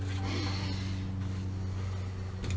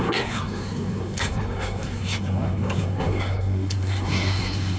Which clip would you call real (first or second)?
first